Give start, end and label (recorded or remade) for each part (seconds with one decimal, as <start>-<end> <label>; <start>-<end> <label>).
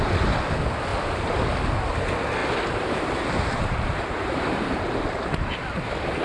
0.0-0.9 recorded; 0.9-1.5 remade; 1.5-2.4 recorded; 2.4-4.8 remade; 4.8-6.2 recorded